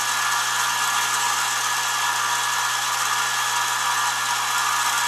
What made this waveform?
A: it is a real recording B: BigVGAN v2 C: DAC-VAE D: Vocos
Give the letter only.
A